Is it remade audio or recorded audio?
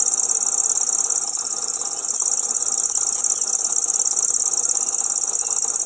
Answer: recorded